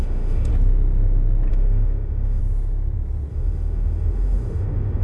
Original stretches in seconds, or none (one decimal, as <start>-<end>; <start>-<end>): 0.5-1.5; 2.4-3.3